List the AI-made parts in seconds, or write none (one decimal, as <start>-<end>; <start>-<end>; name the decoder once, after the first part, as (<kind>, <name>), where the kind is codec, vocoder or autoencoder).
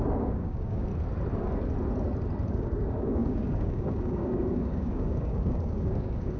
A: 0.0-0.9 (codec, DAC); 2.5-6.4